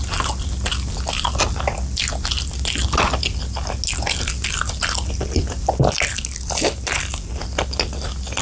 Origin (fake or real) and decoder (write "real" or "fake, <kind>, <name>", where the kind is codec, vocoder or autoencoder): real